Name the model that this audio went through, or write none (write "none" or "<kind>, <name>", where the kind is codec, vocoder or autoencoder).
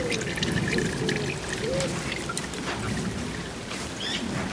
none